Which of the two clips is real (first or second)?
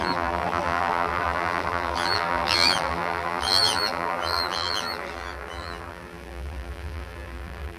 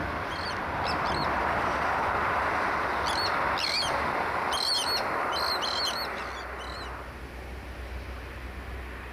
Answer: second